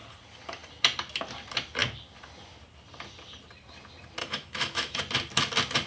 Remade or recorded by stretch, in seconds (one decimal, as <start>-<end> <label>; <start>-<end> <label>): 0.0-4.2 recorded; 4.2-5.0 remade; 5.0-5.9 recorded